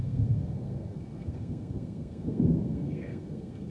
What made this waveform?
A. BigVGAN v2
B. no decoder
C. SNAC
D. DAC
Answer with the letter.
C